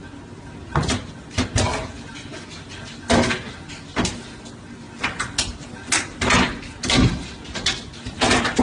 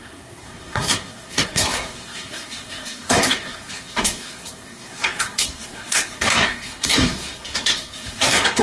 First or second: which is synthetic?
second